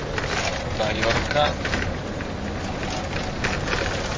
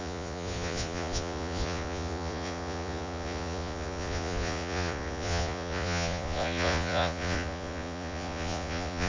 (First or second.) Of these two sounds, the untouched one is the first